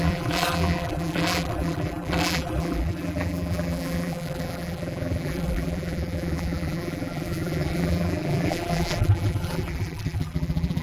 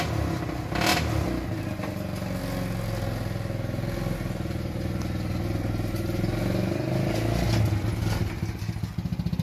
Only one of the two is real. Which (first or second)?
second